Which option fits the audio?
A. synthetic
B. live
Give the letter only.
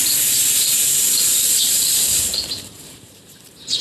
A